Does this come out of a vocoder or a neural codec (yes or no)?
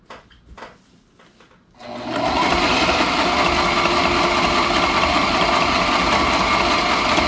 no